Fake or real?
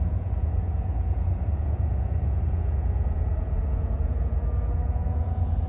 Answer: fake